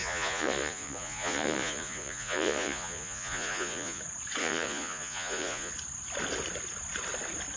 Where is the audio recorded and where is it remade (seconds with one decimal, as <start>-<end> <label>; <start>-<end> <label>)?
0.0-4.0 remade; 4.0-4.4 recorded; 4.4-5.7 remade; 5.7-7.6 recorded